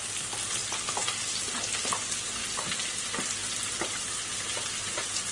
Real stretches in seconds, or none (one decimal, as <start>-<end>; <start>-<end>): 0.0-5.3